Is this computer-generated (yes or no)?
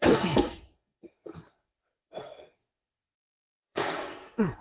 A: yes